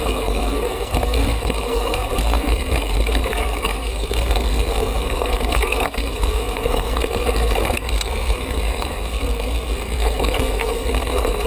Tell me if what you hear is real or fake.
fake